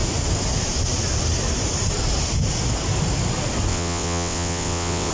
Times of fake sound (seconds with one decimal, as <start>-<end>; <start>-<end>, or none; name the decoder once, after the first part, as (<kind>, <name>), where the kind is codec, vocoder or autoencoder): 3.7-5.1 (vocoder, WaveNeXt)